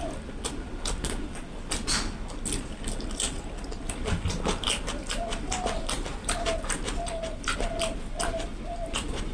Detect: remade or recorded recorded